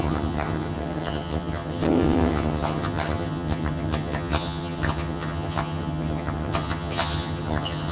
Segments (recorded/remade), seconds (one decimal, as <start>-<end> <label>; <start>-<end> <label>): 0.0-7.9 remade